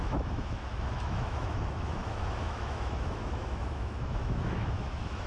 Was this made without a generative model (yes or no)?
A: no